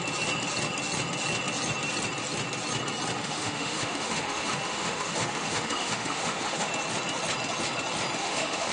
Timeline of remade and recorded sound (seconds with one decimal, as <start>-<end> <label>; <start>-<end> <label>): 0.0-3.2 recorded; 3.2-6.7 remade; 6.7-8.2 recorded; 8.2-8.7 remade